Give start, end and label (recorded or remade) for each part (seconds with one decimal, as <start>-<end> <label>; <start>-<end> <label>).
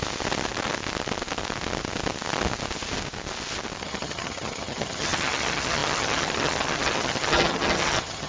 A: 0.0-3.8 recorded; 3.8-8.3 remade